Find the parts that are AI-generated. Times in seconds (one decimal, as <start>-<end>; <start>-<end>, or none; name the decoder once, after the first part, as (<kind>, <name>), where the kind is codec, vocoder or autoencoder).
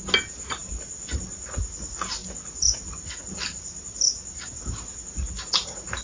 none